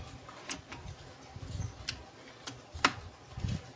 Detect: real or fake real